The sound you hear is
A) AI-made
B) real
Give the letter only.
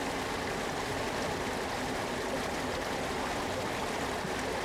B